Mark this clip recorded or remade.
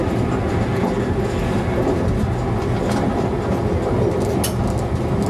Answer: recorded